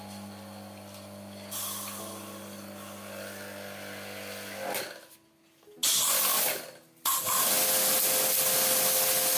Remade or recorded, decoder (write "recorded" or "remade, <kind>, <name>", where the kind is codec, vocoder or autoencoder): recorded